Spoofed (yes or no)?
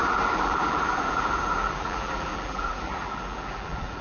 yes